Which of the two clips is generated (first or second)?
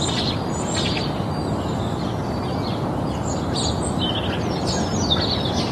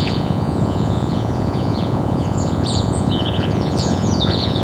second